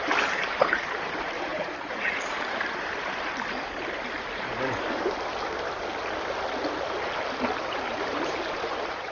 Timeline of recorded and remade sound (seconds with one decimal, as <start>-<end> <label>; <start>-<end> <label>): 0.0-4.5 remade; 4.5-7.6 recorded; 7.6-9.1 remade